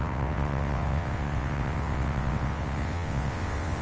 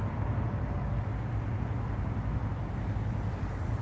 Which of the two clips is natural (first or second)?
second